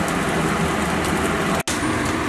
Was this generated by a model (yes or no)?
no